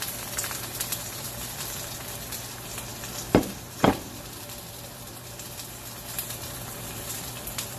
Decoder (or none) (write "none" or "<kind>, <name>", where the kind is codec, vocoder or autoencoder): vocoder, BigVGAN v2